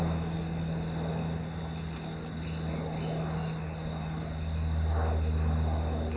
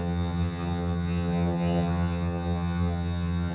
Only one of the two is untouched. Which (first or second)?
first